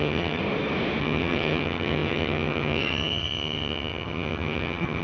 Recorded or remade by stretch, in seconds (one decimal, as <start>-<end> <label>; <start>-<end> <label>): 0.0-0.4 remade; 0.4-1.0 recorded; 1.0-5.0 remade